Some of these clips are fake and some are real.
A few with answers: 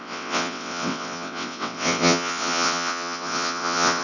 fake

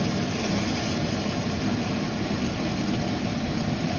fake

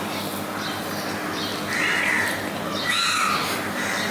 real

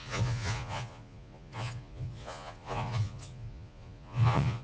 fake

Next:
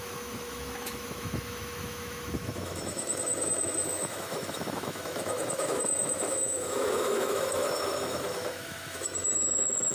fake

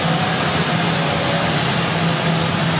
real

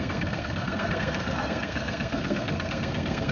fake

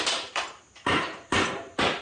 fake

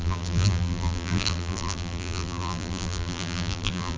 fake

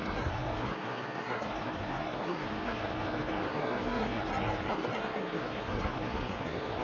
fake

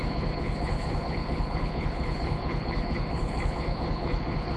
fake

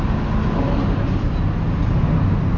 real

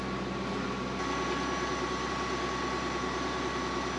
real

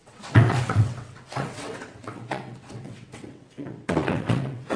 fake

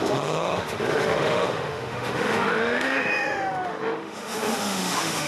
fake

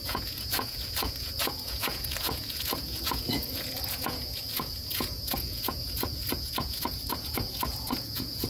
fake